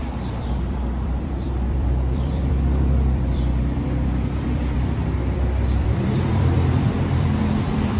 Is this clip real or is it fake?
fake